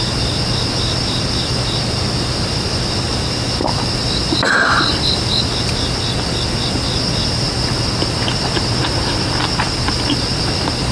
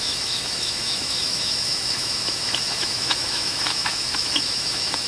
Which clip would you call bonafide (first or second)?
first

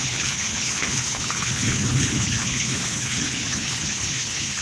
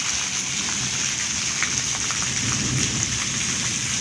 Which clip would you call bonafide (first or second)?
second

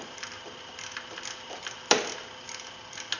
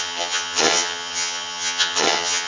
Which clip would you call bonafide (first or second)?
first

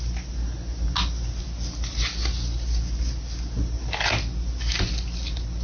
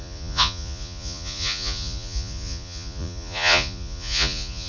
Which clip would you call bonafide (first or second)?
first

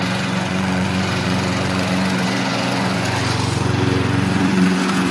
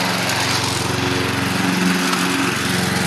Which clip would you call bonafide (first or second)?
second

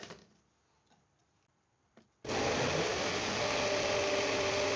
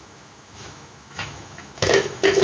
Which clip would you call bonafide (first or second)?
first